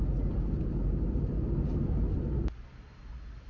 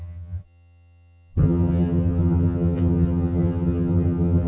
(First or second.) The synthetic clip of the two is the second